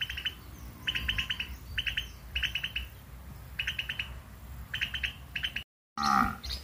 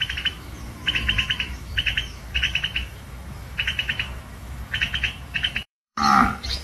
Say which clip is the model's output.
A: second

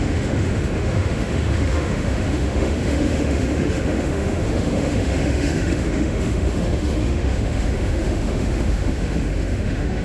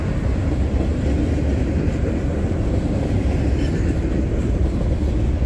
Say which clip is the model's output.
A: first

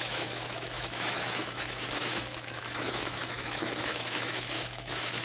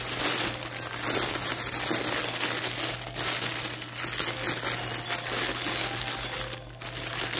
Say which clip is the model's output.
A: first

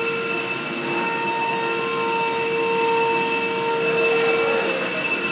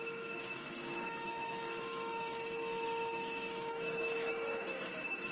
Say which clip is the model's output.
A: second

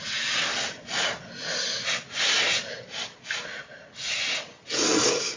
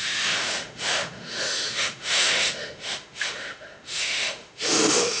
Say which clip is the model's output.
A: second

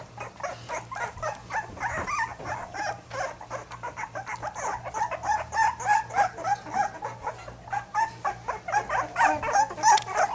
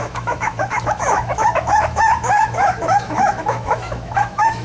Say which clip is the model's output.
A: second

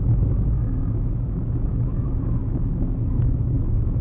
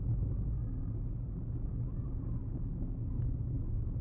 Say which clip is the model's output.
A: first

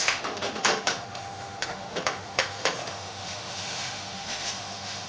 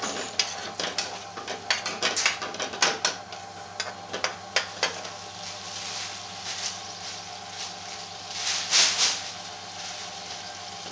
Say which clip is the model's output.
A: first